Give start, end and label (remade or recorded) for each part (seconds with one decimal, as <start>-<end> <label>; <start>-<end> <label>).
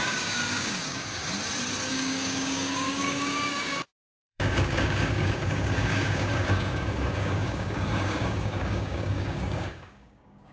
0.0-1.2 remade; 1.2-1.9 recorded; 1.9-10.5 remade